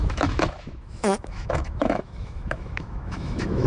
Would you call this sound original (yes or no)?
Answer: no